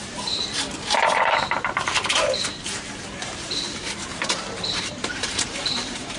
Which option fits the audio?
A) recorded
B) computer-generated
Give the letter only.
B